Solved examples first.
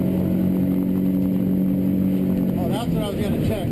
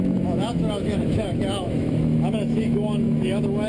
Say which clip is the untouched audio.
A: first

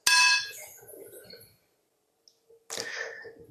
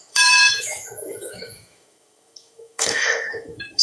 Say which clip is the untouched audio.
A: first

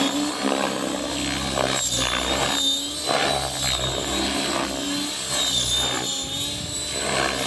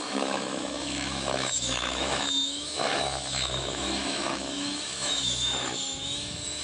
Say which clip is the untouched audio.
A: first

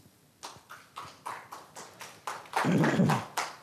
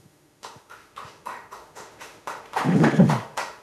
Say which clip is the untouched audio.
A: first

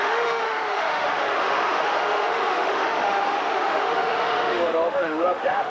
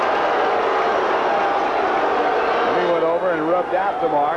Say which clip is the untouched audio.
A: second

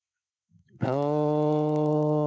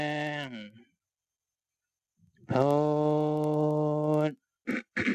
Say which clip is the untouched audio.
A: second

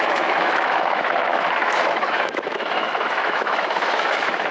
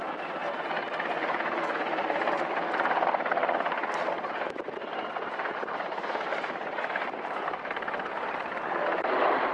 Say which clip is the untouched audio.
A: second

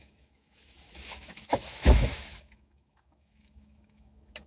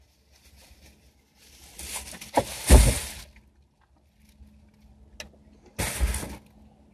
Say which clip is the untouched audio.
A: second